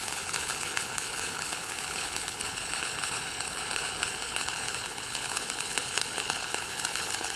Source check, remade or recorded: remade